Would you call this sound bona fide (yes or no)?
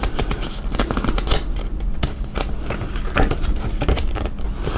yes